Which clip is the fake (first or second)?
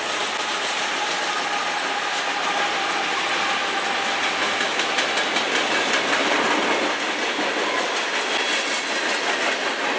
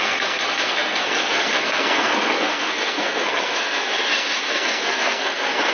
second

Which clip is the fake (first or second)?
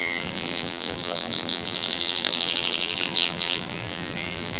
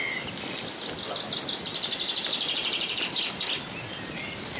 first